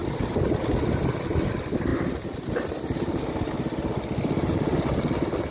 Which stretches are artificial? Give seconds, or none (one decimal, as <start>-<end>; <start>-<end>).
1.9-3.2